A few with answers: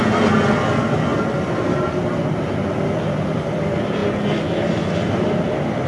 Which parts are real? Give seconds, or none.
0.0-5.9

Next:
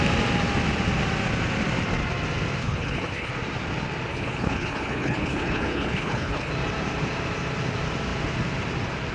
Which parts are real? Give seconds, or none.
0.0-2.6; 3.3-4.1; 6.5-9.1

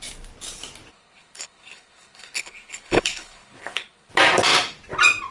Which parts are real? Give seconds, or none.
0.0-0.9; 4.1-5.3